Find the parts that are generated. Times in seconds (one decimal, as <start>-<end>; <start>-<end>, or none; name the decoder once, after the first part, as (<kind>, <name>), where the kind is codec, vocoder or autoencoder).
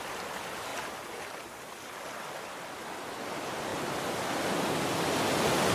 none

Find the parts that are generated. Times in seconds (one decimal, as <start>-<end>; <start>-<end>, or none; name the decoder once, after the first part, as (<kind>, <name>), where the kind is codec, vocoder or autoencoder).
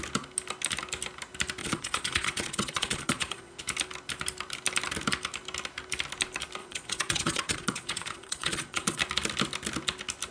1.6-3.6 (vocoder, Vocos); 6.6-9.0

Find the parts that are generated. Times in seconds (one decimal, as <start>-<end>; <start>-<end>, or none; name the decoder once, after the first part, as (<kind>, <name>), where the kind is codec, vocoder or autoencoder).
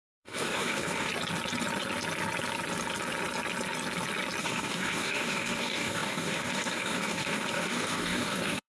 0.0-1.1 (codec, DAC); 4.4-8.7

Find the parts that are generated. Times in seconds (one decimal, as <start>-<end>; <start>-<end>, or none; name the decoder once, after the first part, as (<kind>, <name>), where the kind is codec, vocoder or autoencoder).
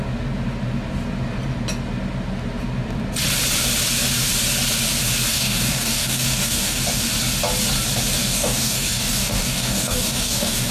5.3-6.8 (codec, DAC); 8.2-10.7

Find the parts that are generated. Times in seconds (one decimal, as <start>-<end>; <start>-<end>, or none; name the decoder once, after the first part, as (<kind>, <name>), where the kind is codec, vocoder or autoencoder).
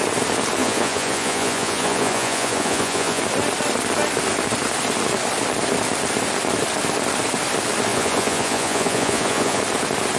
0.6-3.2 (vocoder, Vocos); 7.9-9.6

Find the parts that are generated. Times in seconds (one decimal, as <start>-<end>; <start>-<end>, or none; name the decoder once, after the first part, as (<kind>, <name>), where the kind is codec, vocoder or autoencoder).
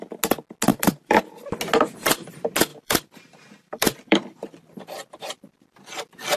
0.7-1.2 (vocoder, BigVGAN v2); 2.7-5.8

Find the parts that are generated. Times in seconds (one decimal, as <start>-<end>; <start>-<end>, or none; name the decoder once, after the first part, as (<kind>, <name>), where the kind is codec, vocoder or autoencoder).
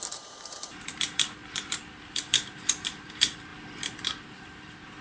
0.0-3.5 (vocoder, BigVGAN v2); 4.1-5.0